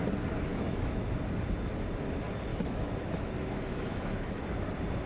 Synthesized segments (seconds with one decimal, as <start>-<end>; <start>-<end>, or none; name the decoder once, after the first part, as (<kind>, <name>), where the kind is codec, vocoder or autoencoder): 0.5-1.1 (autoencoder, DAC-VAE); 2.5-4.4